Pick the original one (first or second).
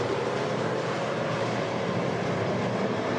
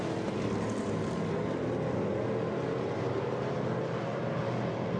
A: second